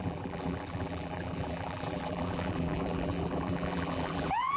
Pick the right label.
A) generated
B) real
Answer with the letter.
A